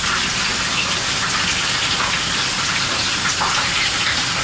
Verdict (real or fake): real